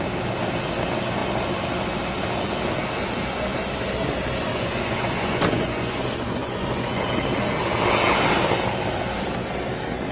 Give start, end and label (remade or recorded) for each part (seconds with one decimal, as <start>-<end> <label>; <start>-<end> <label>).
0.0-4.5 recorded; 4.5-7.0 remade; 7.0-10.1 recorded